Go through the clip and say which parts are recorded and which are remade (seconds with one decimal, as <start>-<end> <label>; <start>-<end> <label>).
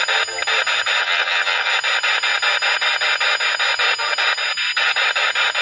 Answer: 0.0-1.0 recorded; 1.0-1.7 remade; 1.7-5.6 recorded